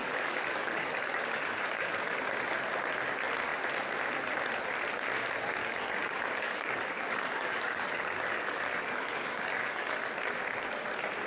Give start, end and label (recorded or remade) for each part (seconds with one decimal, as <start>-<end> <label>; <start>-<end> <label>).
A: 0.0-2.2 remade; 2.2-5.6 recorded; 5.6-10.0 remade; 10.0-11.3 recorded

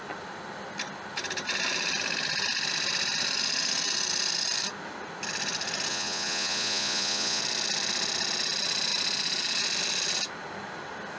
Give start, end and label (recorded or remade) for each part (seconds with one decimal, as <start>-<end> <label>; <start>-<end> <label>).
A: 0.0-5.9 recorded; 5.9-7.4 remade; 7.4-11.2 recorded